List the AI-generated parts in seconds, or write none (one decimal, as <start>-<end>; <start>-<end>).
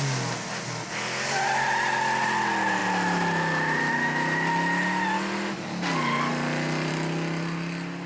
none